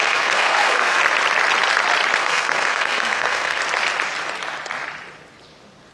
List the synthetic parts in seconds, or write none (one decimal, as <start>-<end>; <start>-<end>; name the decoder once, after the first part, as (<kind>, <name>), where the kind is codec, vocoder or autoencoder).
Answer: 0.0-1.0 (codec, SNAC); 2.2-3.6